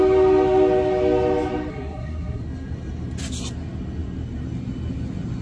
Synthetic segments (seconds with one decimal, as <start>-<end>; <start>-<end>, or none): 1.7-2.4